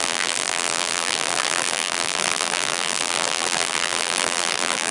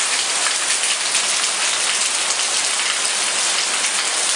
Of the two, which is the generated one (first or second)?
first